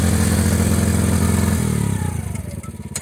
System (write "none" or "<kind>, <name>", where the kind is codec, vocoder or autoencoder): none